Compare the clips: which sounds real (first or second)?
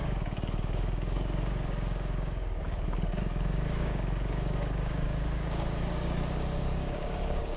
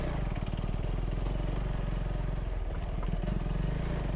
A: second